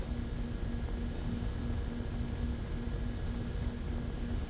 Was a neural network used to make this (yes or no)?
no